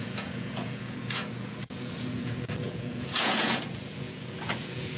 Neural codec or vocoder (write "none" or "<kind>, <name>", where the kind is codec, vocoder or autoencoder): vocoder, Vocos